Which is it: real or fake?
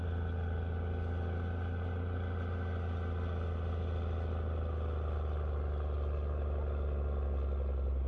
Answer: real